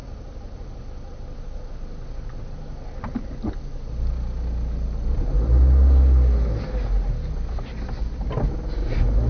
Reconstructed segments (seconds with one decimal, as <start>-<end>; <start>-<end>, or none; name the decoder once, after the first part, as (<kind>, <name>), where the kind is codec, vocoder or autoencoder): none